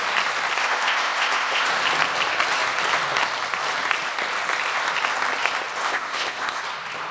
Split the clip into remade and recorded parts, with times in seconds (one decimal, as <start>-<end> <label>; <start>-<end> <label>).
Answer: 0.0-0.6 recorded; 0.6-1.7 remade; 1.7-5.8 recorded; 5.8-6.6 remade; 6.6-7.1 recorded